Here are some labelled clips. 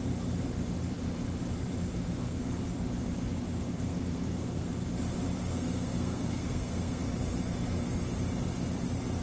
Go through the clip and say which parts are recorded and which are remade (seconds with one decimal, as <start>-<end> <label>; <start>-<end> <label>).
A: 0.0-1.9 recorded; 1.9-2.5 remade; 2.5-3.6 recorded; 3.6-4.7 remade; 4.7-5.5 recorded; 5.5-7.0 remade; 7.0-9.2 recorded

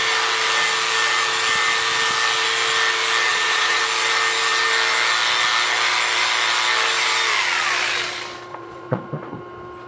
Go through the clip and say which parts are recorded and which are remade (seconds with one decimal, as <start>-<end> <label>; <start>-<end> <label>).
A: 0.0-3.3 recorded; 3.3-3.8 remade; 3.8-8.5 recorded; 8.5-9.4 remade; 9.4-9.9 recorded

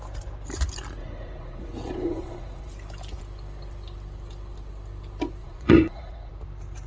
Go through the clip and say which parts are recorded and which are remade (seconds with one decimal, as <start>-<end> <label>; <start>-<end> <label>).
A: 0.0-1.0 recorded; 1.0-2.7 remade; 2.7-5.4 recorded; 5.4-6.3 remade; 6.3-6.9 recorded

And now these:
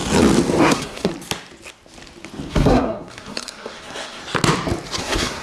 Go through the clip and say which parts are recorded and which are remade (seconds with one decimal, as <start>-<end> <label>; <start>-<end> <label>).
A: 0.0-0.6 recorded; 0.6-1.1 remade; 1.1-2.5 recorded; 2.5-4.2 remade; 4.2-5.0 recorded; 5.0-5.4 remade

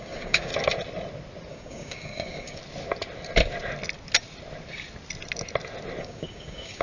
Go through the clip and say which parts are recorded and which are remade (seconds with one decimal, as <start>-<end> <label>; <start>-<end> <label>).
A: 0.0-0.5 remade; 0.5-1.5 recorded; 1.5-2.6 remade; 2.6-6.0 recorded; 6.0-6.8 remade

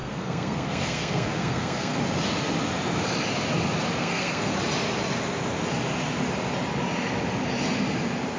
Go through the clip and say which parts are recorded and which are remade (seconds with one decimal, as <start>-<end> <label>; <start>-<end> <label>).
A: 0.0-1.9 remade; 1.9-4.0 recorded; 4.0-4.5 remade; 4.5-8.4 recorded